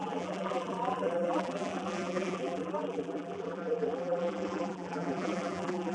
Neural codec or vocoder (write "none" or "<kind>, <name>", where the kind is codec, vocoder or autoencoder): vocoder, BigVGAN v2